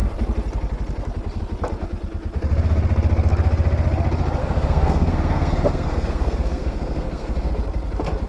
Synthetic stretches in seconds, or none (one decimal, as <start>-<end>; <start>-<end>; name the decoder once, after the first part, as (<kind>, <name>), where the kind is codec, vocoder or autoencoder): 4.4-7.5 (codec, SNAC)